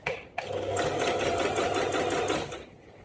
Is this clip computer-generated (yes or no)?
no